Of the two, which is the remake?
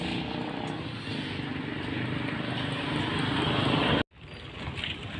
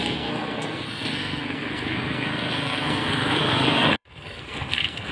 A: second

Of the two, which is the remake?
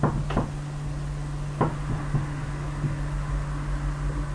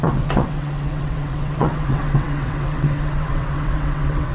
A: second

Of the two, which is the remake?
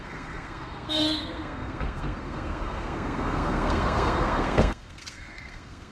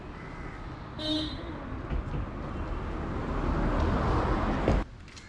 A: first